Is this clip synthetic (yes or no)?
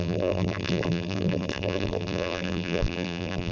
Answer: yes